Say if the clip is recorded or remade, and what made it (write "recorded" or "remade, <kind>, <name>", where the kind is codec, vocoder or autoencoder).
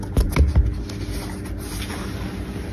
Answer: recorded